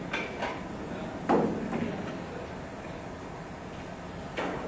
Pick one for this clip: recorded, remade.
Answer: recorded